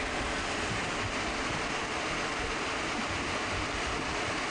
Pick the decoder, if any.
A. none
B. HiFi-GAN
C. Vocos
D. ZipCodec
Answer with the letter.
A